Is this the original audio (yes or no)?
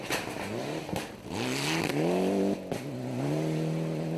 yes